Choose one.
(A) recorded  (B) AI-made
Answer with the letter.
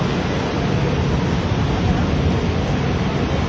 A